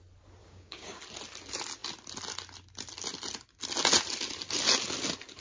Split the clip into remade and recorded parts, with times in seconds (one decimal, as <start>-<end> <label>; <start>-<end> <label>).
0.0-0.4 recorded; 0.4-1.0 remade; 1.0-5.4 recorded